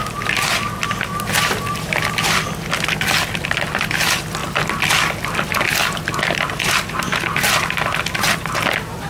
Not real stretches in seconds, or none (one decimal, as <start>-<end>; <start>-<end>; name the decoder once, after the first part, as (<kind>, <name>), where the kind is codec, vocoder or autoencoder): none